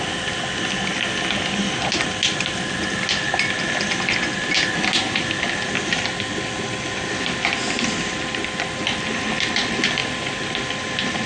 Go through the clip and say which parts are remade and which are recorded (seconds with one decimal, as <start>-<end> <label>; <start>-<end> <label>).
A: 0.0-11.3 recorded